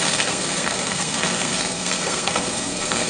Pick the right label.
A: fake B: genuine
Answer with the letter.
A